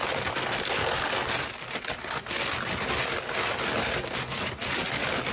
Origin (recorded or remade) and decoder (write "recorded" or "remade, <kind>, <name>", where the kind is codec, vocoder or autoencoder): recorded